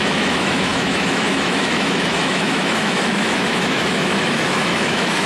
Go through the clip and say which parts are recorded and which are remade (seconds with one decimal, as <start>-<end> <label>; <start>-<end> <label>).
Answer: 0.0-5.3 remade